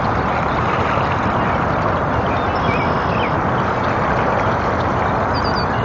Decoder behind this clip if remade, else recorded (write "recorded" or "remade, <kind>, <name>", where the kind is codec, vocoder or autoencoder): recorded